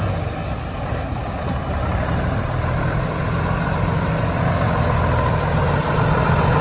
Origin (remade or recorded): recorded